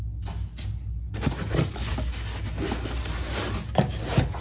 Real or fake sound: real